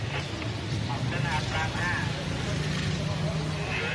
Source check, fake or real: real